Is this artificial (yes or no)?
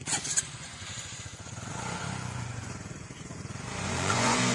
yes